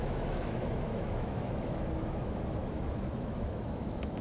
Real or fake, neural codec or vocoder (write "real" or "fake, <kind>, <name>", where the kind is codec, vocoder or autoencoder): fake, autoencoder, DAC-VAE